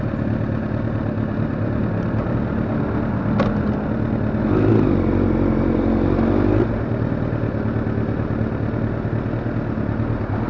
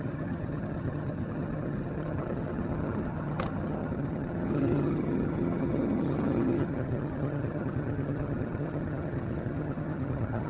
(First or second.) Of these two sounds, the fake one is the second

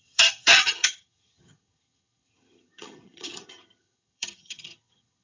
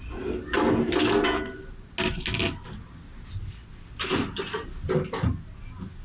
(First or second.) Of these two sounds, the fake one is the first